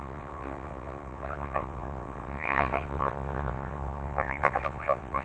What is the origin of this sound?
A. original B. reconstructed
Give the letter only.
B